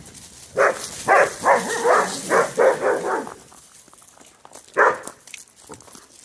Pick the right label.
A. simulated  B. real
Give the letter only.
B